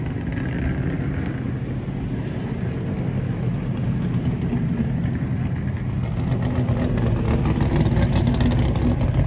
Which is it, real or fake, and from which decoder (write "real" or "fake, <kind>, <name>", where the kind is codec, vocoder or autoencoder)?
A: real